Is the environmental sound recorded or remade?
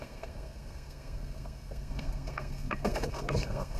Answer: remade